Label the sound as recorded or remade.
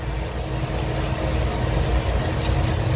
recorded